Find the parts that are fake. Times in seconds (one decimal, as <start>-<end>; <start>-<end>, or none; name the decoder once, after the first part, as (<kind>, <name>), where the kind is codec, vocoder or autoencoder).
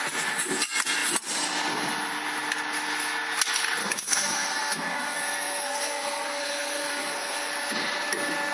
3.8-7.5 (codec, SNAC)